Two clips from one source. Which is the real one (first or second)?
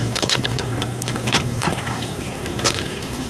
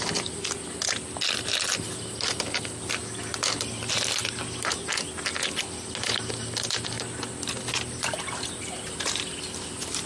second